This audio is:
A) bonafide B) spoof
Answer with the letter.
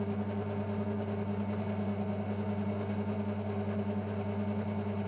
A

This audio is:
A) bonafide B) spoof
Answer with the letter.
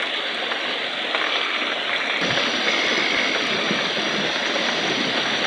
A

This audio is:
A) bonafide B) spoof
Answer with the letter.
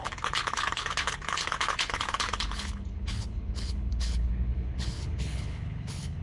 B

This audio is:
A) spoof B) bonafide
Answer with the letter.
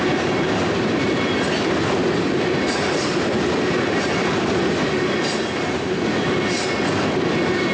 B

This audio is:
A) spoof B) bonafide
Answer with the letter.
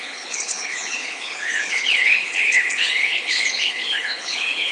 A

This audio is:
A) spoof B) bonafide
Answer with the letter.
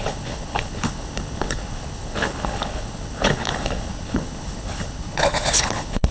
A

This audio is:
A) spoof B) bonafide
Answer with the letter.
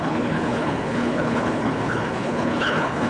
A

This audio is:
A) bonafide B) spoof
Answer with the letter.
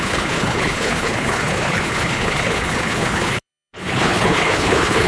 B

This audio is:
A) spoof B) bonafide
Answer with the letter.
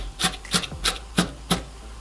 B